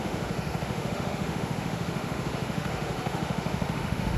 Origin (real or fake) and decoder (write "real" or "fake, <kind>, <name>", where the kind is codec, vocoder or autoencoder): fake, autoencoder, DAC-VAE